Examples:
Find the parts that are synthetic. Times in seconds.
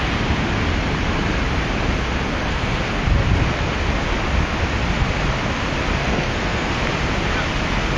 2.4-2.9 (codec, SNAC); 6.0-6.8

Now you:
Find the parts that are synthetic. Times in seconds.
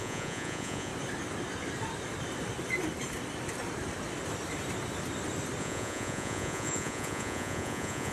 0.0-0.9 (vocoder, Vocos); 5.6-8.1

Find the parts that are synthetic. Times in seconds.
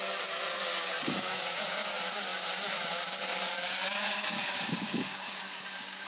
0.0-6.1 (codec, DAC)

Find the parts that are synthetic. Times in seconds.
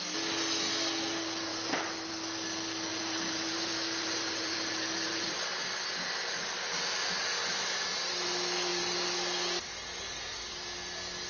2.9-5.4 (vocoder, BigVGAN v2)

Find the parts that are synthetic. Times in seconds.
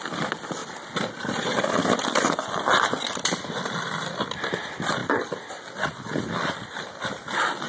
5.0-5.6 (vocoder, BigVGAN v2)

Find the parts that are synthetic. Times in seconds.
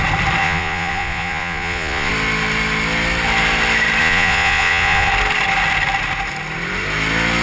0.4-2.1 (vocoder, Vocos); 4.0-5.1